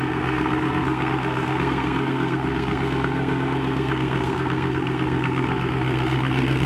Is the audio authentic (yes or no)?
no